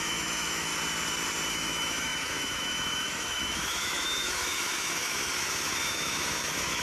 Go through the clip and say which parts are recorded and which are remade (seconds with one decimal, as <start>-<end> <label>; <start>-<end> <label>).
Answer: 0.0-0.7 remade; 0.7-1.5 recorded; 1.5-6.8 remade